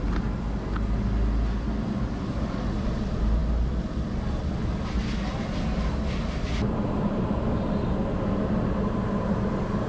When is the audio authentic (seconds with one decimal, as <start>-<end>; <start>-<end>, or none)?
0.0-9.9